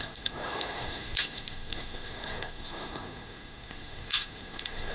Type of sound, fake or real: fake